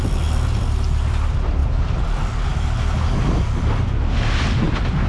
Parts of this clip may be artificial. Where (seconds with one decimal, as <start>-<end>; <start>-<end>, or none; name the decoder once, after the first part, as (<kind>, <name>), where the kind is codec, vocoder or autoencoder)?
none